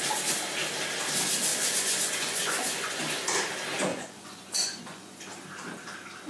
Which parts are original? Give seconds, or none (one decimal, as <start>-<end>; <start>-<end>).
0.0-1.5; 3.3-3.9; 5.2-6.3